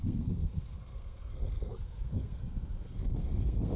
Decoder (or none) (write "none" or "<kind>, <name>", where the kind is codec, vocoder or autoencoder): codec, SNAC